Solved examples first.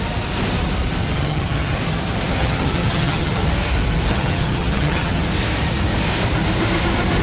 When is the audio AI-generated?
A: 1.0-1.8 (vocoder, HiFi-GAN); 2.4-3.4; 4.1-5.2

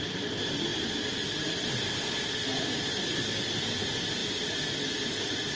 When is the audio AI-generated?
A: 0.0-2.5 (vocoder, BigVGAN v2); 3.5-4.2; 4.9-5.6

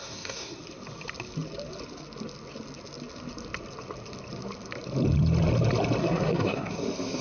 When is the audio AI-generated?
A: 0.0-0.6 (codec, SNAC); 6.0-6.8

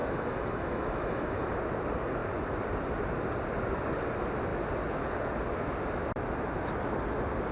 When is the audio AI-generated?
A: 0.0-1.5 (autoencoder, DAC-VAE)

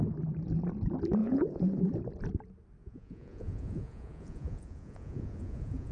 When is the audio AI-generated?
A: 1.2-1.8 (vocoder, Vocos); 2.8-5.9

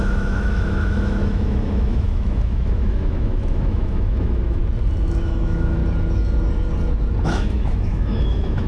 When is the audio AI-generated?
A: 0.0-4.6 (autoencoder, DAC-VAE); 5.2-5.8; 7.2-8.7